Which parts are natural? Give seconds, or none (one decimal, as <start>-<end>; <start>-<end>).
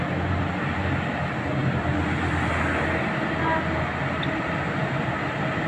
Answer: 0.0-5.7